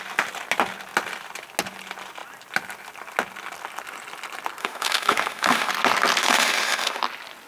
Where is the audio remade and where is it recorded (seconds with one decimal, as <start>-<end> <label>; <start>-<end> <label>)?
0.0-4.6 recorded; 4.6-5.7 remade; 5.7-6.2 recorded; 6.2-7.0 remade; 7.0-7.5 recorded